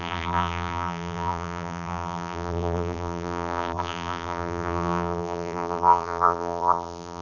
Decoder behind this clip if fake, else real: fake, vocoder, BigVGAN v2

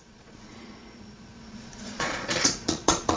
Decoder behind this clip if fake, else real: fake, vocoder, Vocos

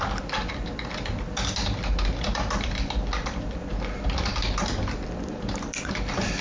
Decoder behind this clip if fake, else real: real